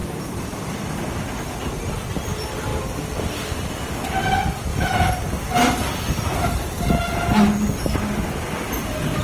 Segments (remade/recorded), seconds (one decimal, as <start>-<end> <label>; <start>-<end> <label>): 0.0-0.7 remade; 0.7-9.2 recorded